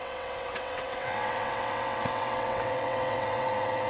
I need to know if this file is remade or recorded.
remade